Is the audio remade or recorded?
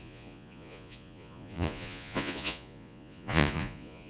remade